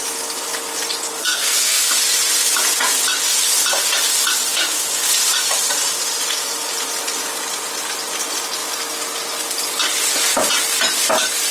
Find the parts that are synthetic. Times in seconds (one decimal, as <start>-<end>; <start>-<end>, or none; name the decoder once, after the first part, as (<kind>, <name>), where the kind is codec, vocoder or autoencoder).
1.2-1.8 (codec, SNAC)